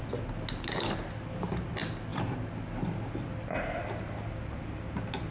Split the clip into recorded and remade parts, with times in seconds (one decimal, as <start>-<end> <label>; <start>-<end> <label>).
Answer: 0.0-5.3 recorded